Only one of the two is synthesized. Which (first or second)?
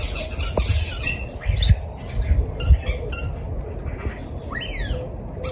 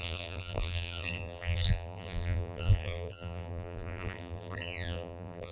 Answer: second